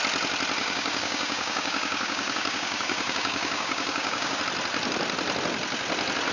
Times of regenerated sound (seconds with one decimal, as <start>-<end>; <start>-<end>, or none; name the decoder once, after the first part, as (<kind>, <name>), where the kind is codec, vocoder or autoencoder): 0.6-4.4 (codec, DAC)